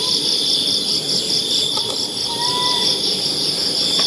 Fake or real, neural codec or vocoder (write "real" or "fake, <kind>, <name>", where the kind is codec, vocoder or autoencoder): real